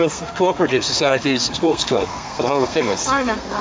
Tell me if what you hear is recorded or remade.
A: remade